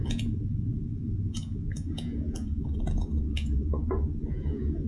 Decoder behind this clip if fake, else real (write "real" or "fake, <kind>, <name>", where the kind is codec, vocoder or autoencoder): fake, vocoder, Vocos